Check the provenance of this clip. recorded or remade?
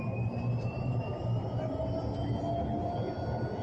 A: recorded